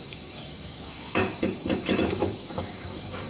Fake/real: fake